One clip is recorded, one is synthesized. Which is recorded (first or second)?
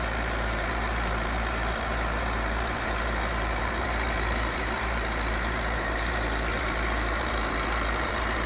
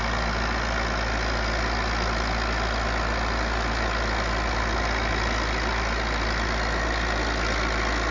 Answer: second